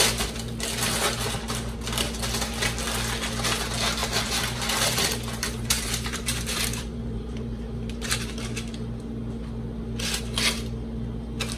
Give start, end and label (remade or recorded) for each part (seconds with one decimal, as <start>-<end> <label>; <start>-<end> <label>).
0.0-4.0 recorded; 4.0-8.3 remade; 8.3-11.6 recorded